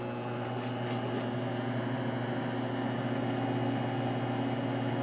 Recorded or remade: recorded